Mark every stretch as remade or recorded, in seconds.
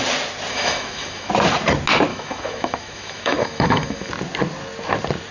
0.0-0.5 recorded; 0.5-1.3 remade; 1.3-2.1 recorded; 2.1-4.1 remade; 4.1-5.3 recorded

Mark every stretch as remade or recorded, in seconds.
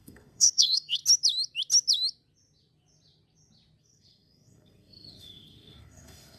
0.0-1.0 remade; 1.0-3.8 recorded; 3.8-6.4 remade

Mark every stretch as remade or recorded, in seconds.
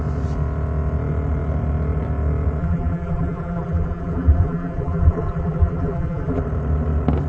0.0-2.6 recorded; 2.6-6.4 remade; 6.4-7.3 recorded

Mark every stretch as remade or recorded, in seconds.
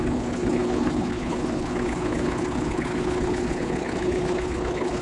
0.0-5.0 remade